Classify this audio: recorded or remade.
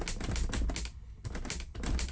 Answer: recorded